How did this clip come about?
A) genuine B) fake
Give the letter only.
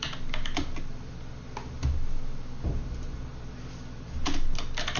A